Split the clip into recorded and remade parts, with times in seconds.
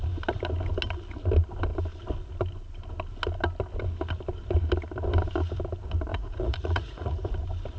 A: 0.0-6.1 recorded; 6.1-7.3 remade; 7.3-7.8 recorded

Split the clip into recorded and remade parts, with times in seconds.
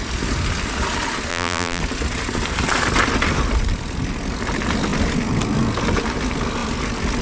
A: 0.0-1.3 recorded; 1.3-1.8 remade; 1.8-7.2 recorded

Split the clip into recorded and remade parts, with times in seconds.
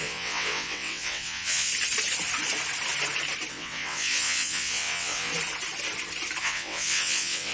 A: 0.0-1.7 remade; 1.7-3.5 recorded; 3.5-5.3 remade; 5.3-6.4 recorded; 6.4-7.5 remade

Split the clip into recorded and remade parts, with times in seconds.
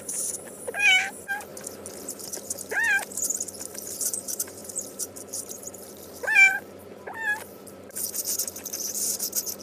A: 0.0-1.5 remade; 1.5-2.1 recorded; 2.1-9.6 remade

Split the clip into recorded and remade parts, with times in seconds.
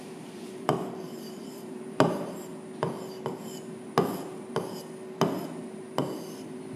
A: 0.0-2.5 remade; 2.5-6.8 recorded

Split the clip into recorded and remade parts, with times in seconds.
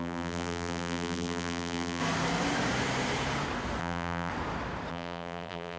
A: 0.0-2.0 remade; 2.0-3.8 recorded; 3.8-4.3 remade; 4.3-4.9 recorded; 4.9-5.8 remade